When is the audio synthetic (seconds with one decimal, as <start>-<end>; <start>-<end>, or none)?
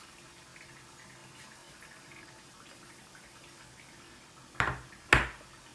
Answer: 1.2-3.6